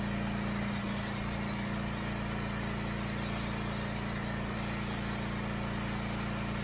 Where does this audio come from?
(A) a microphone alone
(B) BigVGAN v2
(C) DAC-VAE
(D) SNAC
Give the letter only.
A